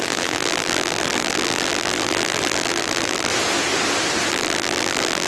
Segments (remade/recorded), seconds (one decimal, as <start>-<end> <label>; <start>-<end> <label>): 0.0-3.3 remade; 3.3-4.3 recorded; 4.3-5.3 remade